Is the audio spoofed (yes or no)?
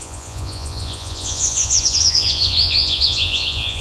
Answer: yes